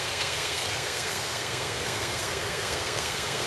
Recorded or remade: remade